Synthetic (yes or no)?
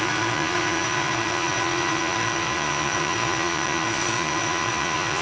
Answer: yes